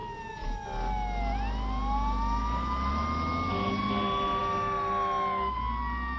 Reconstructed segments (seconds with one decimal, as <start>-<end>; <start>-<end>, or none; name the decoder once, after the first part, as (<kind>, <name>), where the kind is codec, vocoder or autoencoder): none

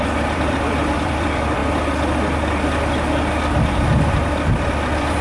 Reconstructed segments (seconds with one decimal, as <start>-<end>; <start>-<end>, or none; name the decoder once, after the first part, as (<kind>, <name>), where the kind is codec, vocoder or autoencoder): 0.0-1.6 (vocoder, BigVGAN v2); 4.7-5.2

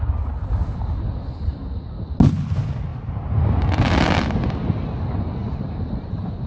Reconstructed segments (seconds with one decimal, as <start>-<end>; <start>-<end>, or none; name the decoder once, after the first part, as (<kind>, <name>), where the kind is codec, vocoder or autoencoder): 5.4-6.5 (vocoder, BigVGAN v2)